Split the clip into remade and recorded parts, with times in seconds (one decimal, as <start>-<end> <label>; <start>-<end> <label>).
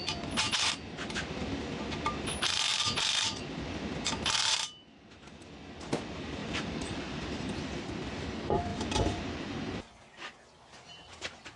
0.0-2.7 recorded; 2.7-3.5 remade; 3.5-6.4 recorded; 6.4-7.9 remade; 7.9-8.7 recorded; 8.7-9.8 remade; 9.8-11.6 recorded